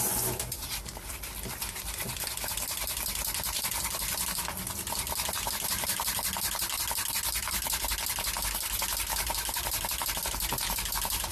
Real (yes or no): yes